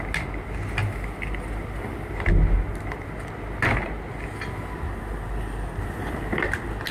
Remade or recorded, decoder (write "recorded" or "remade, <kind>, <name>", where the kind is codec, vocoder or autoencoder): recorded